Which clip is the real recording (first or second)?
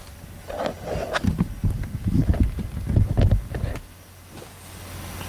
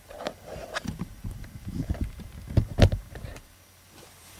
first